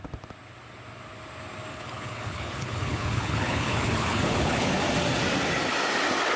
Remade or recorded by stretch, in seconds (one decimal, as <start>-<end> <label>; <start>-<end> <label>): 0.0-1.7 recorded; 1.7-4.7 remade; 4.7-6.4 recorded